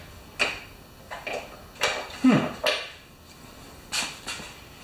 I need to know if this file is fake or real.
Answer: real